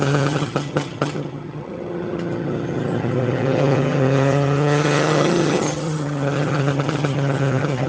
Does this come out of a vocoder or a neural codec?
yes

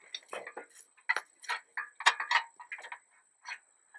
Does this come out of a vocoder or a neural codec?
no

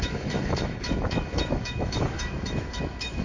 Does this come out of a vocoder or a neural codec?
yes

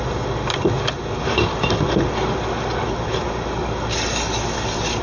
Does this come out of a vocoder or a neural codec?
no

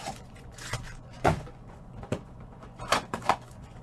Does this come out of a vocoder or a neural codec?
yes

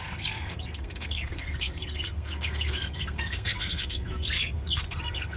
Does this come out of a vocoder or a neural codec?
yes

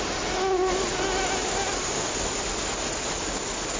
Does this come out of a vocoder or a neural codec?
no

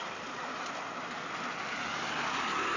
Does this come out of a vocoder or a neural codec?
no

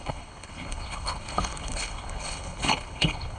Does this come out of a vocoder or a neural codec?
yes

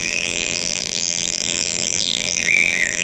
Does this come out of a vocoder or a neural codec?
yes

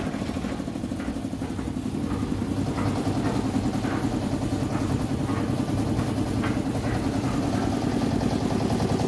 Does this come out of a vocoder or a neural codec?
no